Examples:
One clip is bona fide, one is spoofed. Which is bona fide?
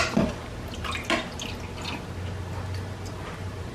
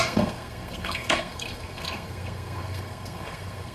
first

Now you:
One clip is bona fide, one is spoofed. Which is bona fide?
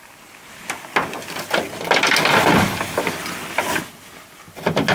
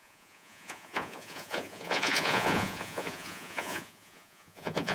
first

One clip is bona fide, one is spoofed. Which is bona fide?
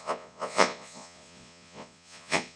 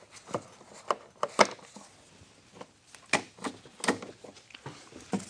second